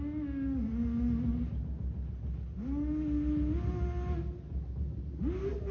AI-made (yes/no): no